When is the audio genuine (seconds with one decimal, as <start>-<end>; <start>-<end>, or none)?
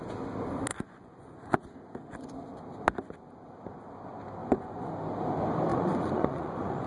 0.0-0.7; 1.6-4.4; 4.9-5.7